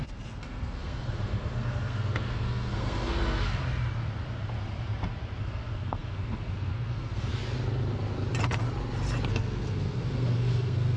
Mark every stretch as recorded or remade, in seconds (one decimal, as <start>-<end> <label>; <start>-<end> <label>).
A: 0.0-3.6 remade; 3.6-5.4 recorded; 5.4-7.3 remade; 7.3-9.3 recorded; 9.3-11.0 remade

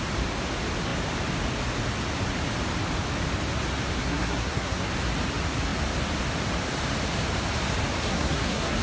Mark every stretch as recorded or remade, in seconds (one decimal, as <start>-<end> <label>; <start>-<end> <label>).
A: 0.0-4.0 recorded; 4.0-4.9 remade; 4.9-8.0 recorded; 8.0-8.8 remade

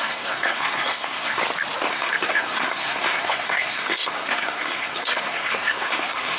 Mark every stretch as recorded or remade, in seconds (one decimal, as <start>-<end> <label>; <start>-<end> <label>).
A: 0.0-1.4 remade; 1.4-1.9 recorded; 1.9-6.4 remade